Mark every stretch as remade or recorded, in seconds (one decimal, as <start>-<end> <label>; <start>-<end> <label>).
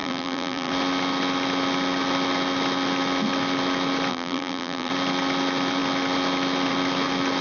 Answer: 0.0-0.7 remade; 0.7-4.1 recorded; 4.1-4.9 remade; 4.9-7.4 recorded